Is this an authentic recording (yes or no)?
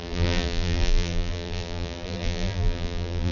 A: no